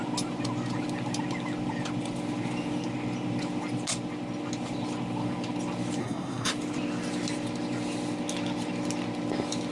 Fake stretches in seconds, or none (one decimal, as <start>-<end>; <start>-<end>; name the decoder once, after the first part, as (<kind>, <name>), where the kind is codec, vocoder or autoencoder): 6.0-6.5 (codec, SNAC)